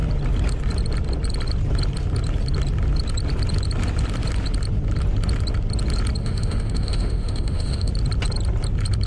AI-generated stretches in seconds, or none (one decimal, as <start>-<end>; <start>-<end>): 6.2-7.9